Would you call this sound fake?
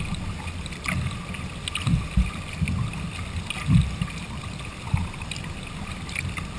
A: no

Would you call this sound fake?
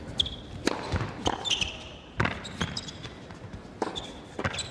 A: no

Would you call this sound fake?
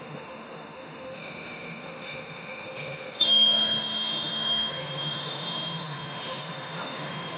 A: yes